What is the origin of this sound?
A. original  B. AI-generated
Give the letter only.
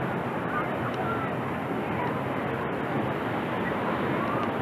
A